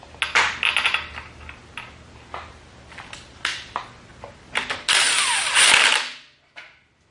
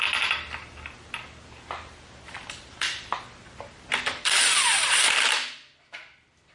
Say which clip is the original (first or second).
first